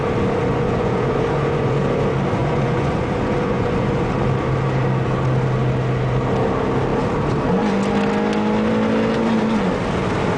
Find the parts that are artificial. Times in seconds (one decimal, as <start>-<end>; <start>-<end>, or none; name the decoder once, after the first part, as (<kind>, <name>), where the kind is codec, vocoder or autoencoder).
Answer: 0.5-1.8 (vocoder, Vocos); 2.4-4.1